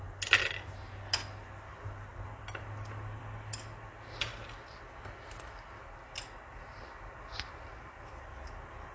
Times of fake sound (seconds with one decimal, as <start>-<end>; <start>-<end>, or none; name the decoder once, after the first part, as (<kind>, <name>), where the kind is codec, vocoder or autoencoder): none